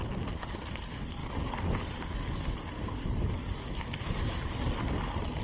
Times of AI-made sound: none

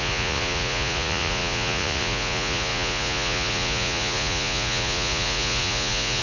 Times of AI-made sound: 0.0-6.2 (vocoder, Vocos)

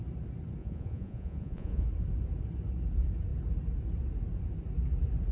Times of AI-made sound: 0.6-1.9 (vocoder, Vocos)

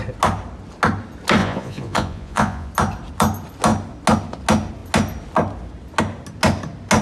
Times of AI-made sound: 1.4-2.7 (vocoder, Vocos)